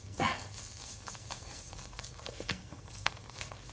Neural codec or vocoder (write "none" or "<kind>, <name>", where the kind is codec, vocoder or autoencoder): codec, SNAC